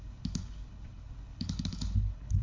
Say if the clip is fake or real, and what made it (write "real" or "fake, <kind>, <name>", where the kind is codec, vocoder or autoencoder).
fake, codec, HILCodec